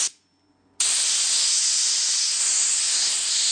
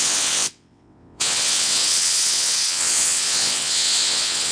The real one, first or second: first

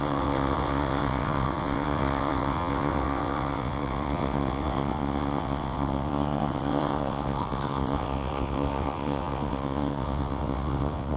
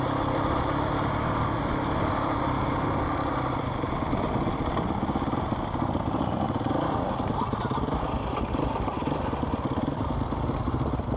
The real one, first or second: second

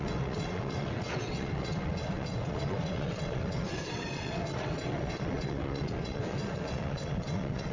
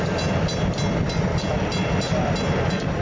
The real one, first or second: second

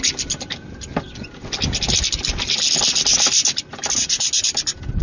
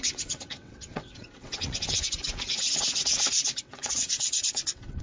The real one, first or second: first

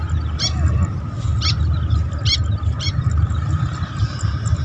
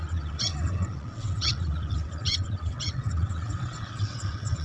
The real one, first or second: first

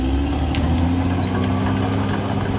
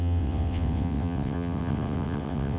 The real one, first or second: first